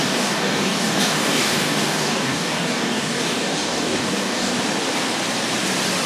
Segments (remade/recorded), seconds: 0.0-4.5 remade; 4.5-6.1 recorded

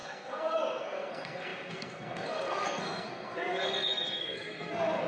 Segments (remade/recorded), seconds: 0.0-5.1 remade

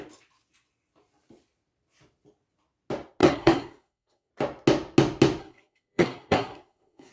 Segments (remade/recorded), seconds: 0.0-3.2 recorded; 3.2-4.3 remade; 4.3-5.4 recorded; 5.4-7.1 remade

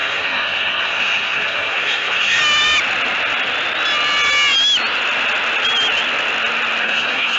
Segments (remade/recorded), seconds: 0.0-2.4 remade; 2.4-6.8 recorded; 6.8-7.4 remade